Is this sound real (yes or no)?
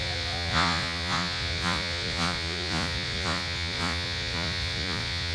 no